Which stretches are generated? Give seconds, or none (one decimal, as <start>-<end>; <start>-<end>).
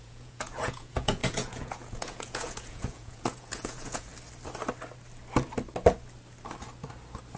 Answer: 0.0-4.1